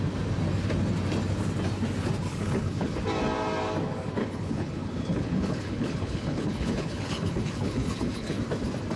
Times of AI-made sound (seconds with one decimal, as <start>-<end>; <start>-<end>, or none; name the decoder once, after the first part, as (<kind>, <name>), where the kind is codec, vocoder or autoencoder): 2.3-3.0 (codec, HILCodec); 4.2-8.4